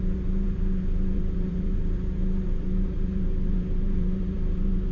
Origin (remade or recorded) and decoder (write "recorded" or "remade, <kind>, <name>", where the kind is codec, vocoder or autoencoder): remade, vocoder, BigVGAN v2